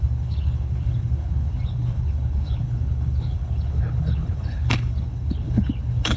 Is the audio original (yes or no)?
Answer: no